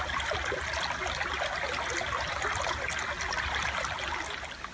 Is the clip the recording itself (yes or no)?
yes